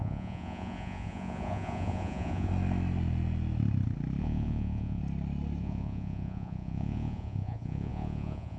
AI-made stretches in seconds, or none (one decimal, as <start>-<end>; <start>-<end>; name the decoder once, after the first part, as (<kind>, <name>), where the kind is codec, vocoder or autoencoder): 0.0-2.5 (vocoder, Vocos); 4.2-5.0; 5.6-8.6